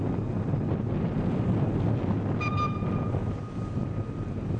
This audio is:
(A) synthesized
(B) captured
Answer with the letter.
B